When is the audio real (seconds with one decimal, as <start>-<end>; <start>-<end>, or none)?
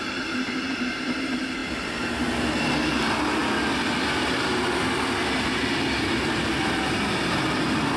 0.0-8.0